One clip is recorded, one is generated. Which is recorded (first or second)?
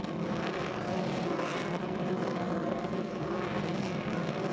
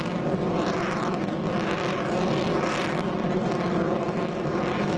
second